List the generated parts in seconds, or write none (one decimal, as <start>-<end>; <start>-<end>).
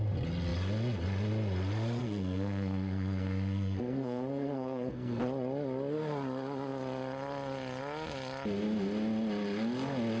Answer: 2.0-5.2